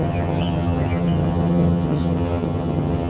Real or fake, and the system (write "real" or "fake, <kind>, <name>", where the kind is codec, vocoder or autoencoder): fake, vocoder, HiFi-GAN